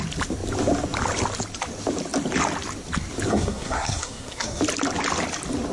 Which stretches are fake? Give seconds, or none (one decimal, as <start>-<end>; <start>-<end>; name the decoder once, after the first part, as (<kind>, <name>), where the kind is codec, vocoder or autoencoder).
3.3-4.6 (codec, SNAC)